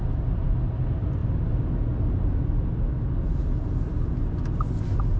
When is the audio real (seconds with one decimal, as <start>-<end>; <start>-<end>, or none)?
0.0-5.2